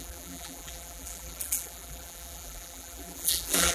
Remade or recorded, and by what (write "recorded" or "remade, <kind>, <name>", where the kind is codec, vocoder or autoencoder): remade, vocoder, BigVGAN v2